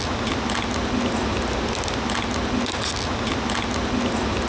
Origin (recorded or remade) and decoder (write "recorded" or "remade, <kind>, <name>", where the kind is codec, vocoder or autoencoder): recorded